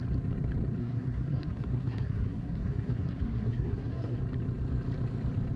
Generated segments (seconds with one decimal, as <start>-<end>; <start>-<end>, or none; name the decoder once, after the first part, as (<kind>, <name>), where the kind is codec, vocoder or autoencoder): 0.8-4.2 (codec, SNAC)